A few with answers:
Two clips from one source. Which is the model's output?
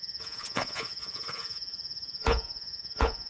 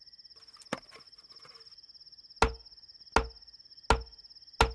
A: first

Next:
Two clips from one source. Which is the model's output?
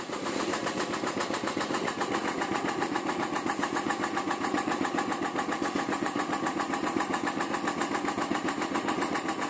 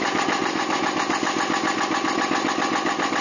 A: first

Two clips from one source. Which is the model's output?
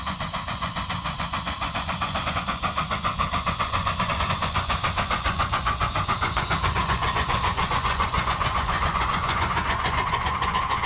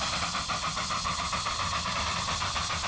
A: first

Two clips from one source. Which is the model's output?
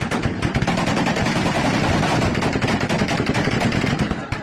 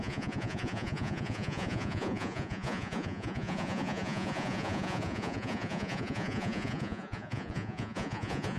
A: second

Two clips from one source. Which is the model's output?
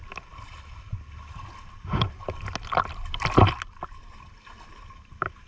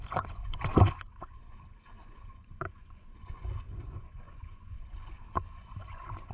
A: second